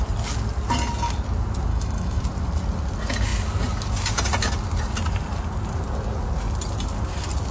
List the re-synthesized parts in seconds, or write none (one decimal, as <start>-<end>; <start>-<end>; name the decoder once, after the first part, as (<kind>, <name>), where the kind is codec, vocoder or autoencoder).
1.7-2.2 (autoencoder, DAC-VAE)